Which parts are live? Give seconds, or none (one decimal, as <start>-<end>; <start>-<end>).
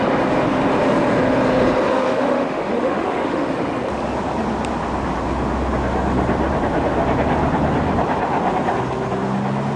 0.0-1.9; 3.5-9.8